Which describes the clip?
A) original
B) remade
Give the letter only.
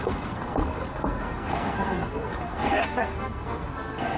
B